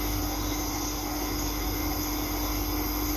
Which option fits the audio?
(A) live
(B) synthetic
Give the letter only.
A